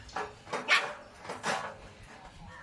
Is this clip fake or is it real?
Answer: real